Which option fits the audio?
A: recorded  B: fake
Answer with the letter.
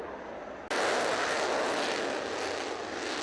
A